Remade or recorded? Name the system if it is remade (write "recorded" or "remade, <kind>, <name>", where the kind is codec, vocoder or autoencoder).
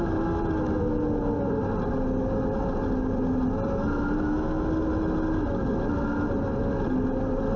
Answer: recorded